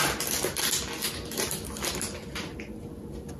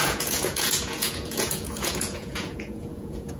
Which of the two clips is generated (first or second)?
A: second